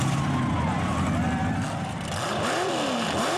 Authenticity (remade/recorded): remade